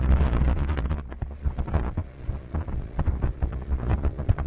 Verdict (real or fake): fake